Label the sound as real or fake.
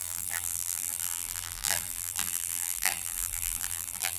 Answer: fake